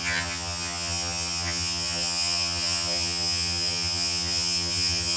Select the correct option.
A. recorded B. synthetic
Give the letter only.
B